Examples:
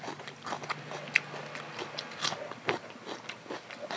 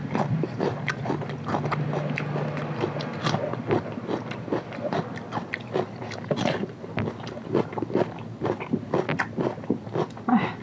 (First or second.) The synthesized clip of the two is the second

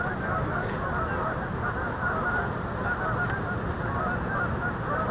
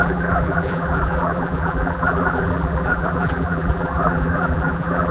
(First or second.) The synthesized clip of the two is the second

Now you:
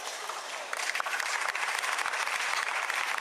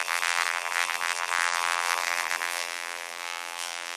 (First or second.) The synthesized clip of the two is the second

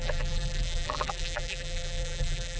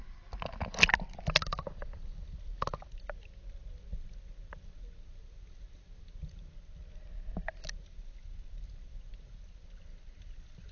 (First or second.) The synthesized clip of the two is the first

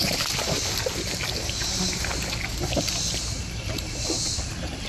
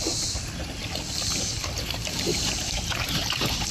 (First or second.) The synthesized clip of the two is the second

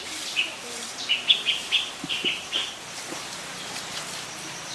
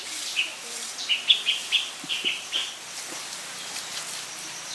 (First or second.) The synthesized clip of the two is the first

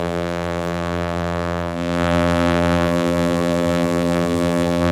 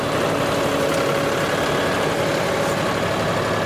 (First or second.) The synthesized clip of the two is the first